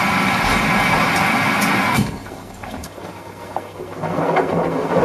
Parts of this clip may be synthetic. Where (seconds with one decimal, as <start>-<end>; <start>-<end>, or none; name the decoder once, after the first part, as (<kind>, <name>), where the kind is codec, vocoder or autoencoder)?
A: 1.9-5.0 (codec, SNAC)